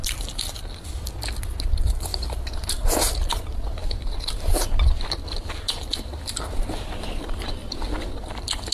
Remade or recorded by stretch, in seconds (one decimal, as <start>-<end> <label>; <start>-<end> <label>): 0.0-3.8 recorded; 3.8-4.3 remade; 4.3-8.7 recorded